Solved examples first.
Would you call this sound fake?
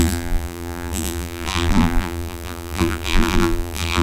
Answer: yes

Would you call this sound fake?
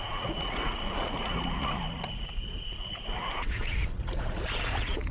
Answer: yes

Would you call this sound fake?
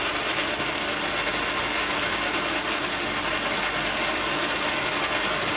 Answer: no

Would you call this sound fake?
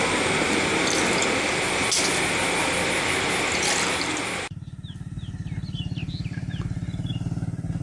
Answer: no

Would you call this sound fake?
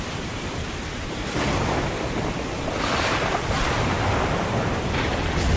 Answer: no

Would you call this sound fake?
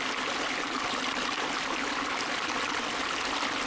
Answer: no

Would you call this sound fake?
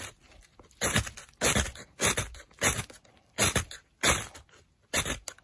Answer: no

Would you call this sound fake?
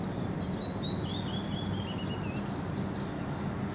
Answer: no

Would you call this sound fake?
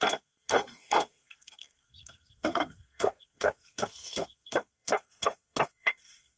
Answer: yes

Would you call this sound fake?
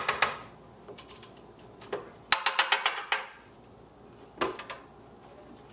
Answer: no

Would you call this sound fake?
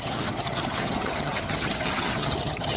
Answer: yes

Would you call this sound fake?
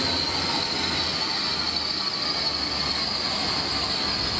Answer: no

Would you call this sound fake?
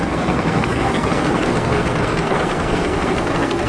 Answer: yes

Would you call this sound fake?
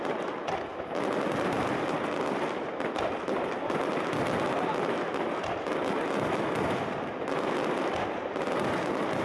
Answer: no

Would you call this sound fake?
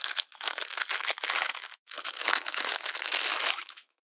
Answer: yes